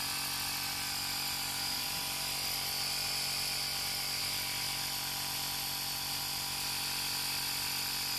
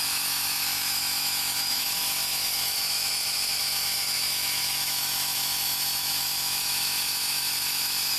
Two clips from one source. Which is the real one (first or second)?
first